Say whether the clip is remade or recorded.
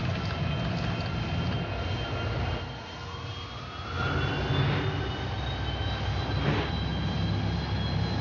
recorded